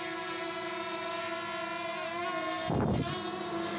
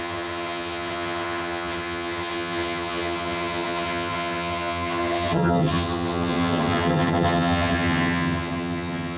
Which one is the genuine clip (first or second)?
first